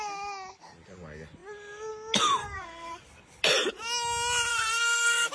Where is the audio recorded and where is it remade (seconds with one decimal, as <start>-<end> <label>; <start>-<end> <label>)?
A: 0.0-2.4 recorded; 2.4-3.0 remade; 3.0-4.5 recorded; 4.5-5.3 remade

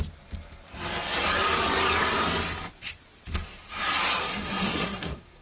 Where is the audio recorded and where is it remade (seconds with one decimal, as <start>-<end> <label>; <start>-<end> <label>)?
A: 0.0-4.2 recorded; 4.2-5.4 remade

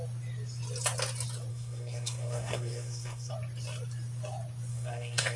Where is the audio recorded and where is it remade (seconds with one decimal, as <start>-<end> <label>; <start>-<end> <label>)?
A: 0.0-1.5 recorded; 1.5-3.3 remade; 3.3-4.7 recorded; 4.7-5.4 remade

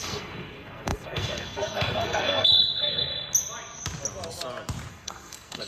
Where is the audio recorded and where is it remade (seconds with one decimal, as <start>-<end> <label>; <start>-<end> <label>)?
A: 0.0-3.1 remade; 3.1-4.9 recorded; 4.9-5.7 remade

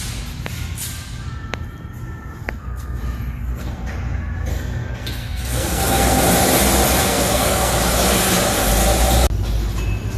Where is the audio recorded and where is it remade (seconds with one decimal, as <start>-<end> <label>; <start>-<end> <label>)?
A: 0.0-2.4 recorded; 2.4-3.0 remade; 3.0-3.4 recorded; 3.4-3.9 remade; 3.9-4.5 recorded; 4.5-6.2 remade; 6.2-7.0 recorded; 7.0-7.8 remade; 7.8-10.2 recorded